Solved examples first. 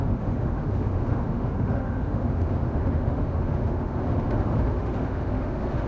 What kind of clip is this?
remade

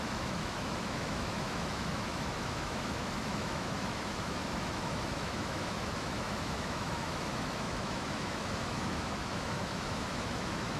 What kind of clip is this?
remade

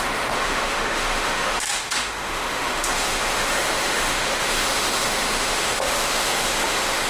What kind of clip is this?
remade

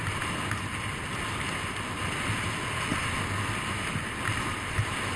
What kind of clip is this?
recorded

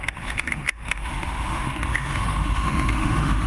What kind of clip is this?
remade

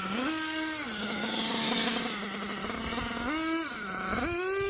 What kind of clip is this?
recorded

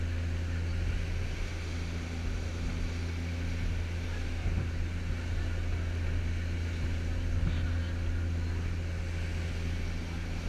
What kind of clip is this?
recorded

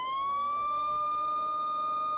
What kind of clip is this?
remade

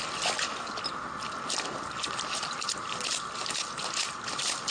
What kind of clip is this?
recorded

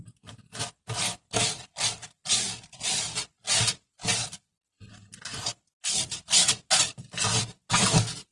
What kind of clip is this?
recorded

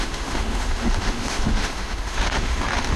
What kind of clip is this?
remade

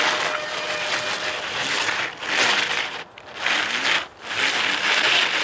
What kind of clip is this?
recorded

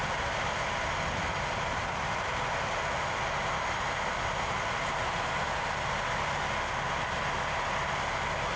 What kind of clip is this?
recorded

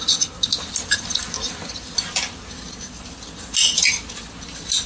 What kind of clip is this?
recorded